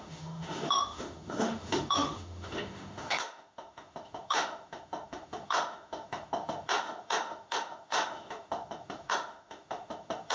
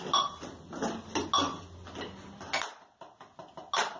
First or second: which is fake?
first